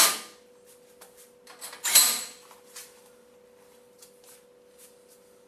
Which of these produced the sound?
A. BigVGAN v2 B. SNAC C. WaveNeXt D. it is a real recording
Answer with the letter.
D